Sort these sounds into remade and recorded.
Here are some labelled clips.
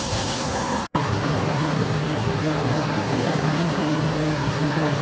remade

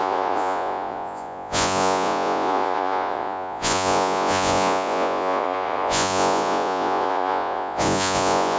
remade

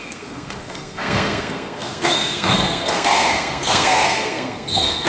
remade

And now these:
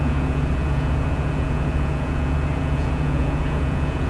remade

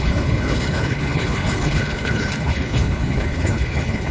remade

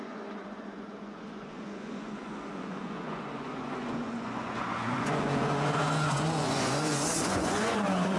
remade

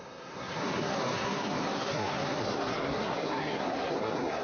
remade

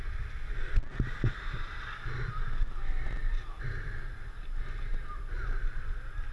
recorded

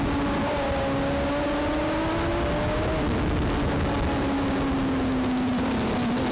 recorded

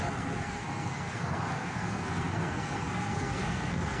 remade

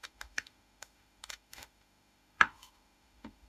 remade